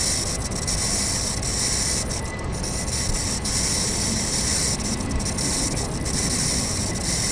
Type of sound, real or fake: real